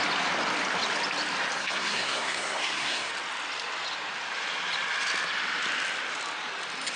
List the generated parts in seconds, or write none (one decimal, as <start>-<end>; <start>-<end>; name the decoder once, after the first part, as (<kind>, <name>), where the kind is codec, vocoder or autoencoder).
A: 1.6-3.1 (codec, SNAC)